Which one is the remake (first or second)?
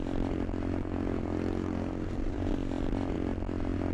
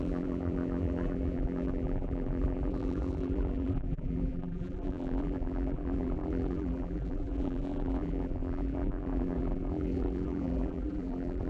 second